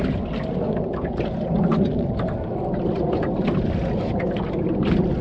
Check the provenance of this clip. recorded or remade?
recorded